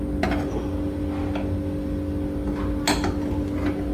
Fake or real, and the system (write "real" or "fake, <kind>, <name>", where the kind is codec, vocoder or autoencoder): real